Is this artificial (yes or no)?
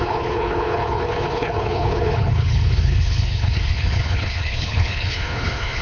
yes